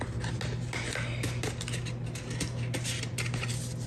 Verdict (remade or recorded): recorded